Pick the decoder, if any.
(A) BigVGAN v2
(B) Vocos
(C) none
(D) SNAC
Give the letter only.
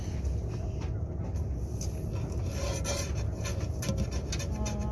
C